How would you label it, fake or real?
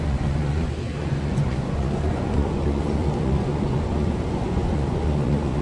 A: fake